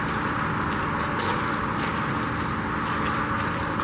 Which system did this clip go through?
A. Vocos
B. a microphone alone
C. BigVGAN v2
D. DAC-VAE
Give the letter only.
B